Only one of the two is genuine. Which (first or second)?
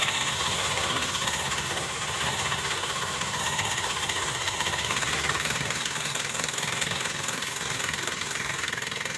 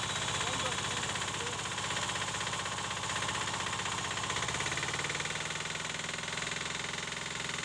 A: second